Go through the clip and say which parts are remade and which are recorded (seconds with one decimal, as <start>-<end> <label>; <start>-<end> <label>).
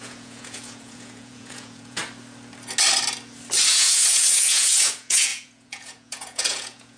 0.0-2.0 remade; 2.0-3.7 recorded; 3.7-7.0 remade